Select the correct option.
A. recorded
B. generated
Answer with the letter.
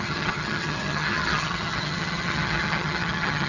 B